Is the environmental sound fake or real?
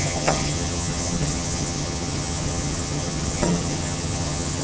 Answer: fake